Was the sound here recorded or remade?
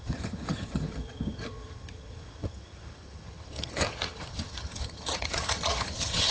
remade